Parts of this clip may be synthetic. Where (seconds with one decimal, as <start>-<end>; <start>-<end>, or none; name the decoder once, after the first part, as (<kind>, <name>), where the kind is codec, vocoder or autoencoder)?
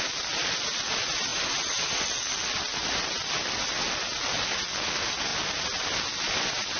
none